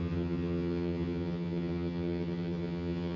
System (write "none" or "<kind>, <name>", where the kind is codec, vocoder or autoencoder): vocoder, HiFi-GAN